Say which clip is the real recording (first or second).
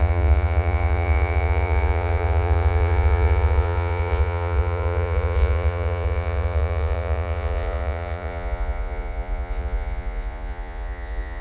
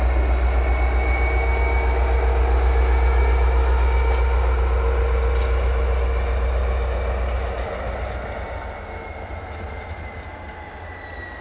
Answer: second